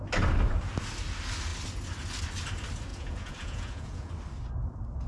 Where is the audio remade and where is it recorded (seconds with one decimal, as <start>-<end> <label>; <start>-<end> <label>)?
0.0-2.9 recorded; 2.9-4.1 remade; 4.1-5.1 recorded